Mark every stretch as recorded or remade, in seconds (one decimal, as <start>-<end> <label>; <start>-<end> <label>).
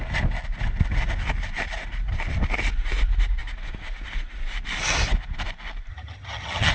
0.0-5.9 recorded; 5.9-6.7 remade